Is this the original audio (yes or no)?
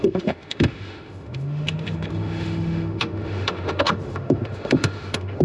no